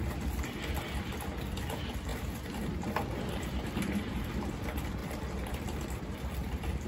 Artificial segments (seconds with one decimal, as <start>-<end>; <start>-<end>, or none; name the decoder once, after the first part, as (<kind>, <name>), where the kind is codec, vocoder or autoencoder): 2.1-4.5 (vocoder, BigVGAN v2); 5.0-6.5

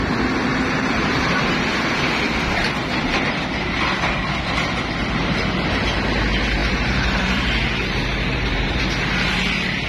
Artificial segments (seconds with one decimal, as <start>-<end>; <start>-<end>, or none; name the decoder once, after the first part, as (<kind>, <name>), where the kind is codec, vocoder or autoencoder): 0.5-1.2 (vocoder, BigVGAN v2); 6.6-8.8

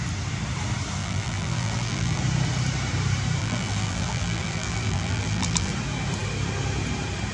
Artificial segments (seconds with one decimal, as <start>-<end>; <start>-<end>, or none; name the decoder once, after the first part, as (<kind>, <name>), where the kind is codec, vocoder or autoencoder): 1.0-2.2 (vocoder, BigVGAN v2); 3.4-5.7

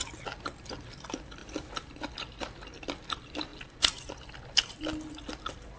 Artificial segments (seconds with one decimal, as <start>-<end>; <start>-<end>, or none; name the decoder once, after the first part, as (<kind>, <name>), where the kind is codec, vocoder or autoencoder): 0.0-1.4 (vocoder, BigVGAN v2); 2.1-5.8

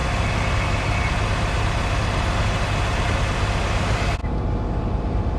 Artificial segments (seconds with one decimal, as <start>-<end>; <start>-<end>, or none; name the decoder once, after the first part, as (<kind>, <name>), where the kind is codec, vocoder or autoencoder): 3.2-4.2 (vocoder, BigVGAN v2); 4.8-5.4

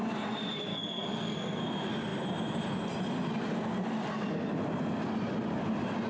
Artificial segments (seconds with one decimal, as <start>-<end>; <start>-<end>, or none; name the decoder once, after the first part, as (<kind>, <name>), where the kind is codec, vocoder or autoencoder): 0.7-1.6 (codec, SNAC)

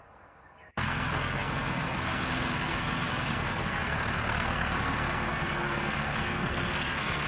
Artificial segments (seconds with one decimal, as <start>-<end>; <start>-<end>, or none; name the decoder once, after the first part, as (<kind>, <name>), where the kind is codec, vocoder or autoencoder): 0.0-7.3 (codec, SNAC)

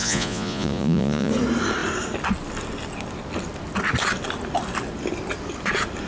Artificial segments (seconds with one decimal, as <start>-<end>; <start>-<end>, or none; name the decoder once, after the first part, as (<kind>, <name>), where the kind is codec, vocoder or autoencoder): 0.0-1.3 (vocoder, Vocos)